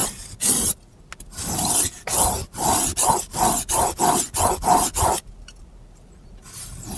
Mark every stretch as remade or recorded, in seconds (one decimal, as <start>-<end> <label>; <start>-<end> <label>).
0.0-7.0 recorded